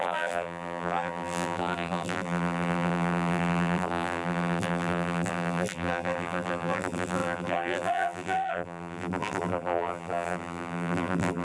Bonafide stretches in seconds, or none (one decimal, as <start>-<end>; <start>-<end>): none